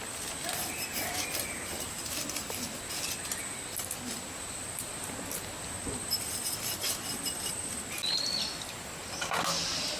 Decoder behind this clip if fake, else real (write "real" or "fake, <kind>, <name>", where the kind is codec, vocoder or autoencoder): real